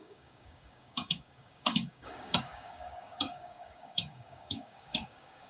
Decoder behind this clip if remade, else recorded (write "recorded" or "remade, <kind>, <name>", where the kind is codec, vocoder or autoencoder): remade, codec, DAC